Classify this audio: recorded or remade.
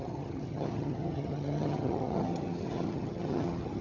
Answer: remade